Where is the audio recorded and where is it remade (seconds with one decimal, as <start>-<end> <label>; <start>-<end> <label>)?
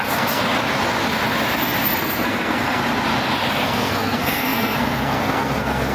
0.0-0.4 remade; 0.4-2.0 recorded; 2.0-2.8 remade; 2.8-3.5 recorded; 3.5-5.9 remade